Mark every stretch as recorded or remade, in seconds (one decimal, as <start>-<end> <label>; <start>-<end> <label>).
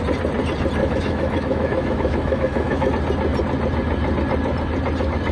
0.0-0.8 recorded; 0.8-2.9 remade; 2.9-5.3 recorded